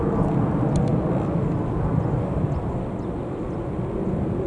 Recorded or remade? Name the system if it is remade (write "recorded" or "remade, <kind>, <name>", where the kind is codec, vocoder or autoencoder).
recorded